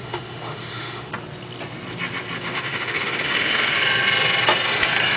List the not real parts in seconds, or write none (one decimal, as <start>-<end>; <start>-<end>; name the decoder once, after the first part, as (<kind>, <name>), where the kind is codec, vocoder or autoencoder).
0.0-1.1 (autoencoder, DAC-VAE); 2.4-3.8